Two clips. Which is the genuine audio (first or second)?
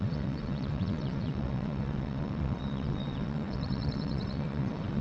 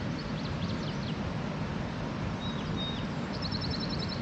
second